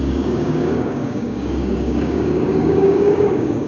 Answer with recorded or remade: remade